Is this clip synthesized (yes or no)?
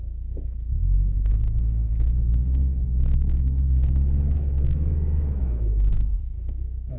yes